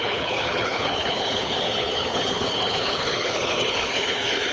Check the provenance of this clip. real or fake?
fake